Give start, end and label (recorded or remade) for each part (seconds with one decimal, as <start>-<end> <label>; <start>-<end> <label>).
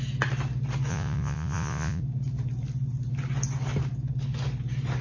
0.0-0.9 recorded; 0.9-2.0 remade; 2.0-5.0 recorded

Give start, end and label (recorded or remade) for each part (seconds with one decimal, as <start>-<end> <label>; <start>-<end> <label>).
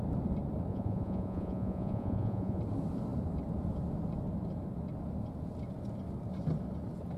0.0-0.7 recorded; 0.7-2.6 remade; 2.6-7.2 recorded